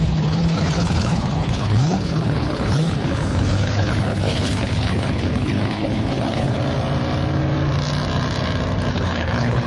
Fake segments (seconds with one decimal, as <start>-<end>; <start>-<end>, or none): 0.0-6.6; 8.9-9.7